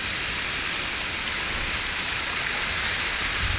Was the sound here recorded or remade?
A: remade